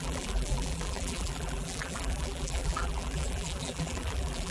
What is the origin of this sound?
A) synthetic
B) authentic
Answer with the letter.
A